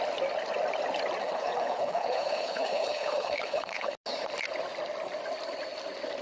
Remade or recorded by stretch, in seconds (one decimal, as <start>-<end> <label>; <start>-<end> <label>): 0.0-1.2 recorded; 1.2-3.9 remade; 3.9-6.2 recorded